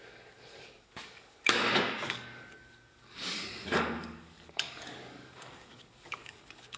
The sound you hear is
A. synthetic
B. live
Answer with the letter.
A